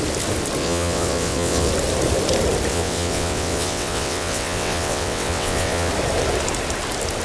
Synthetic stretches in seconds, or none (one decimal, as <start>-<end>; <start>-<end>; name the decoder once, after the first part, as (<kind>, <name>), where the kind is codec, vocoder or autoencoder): 0.6-1.7 (vocoder, WaveNeXt); 2.7-5.9